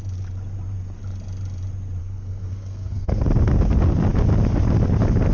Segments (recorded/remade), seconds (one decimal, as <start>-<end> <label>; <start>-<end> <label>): 0.0-2.0 recorded; 2.0-3.2 remade; 3.2-5.3 recorded